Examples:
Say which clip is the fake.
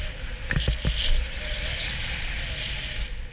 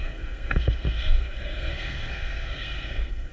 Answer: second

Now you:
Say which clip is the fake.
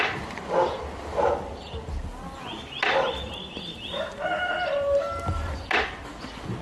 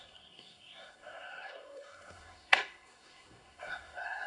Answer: second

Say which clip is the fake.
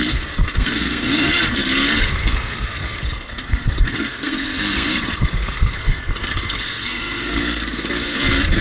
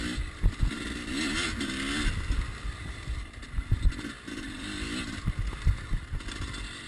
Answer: first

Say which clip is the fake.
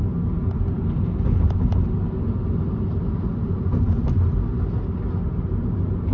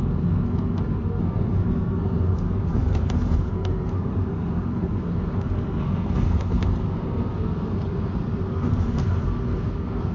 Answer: second